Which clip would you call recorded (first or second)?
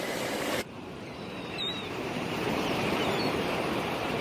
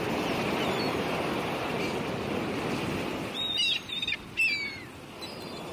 second